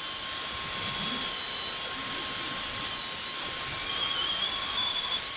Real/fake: real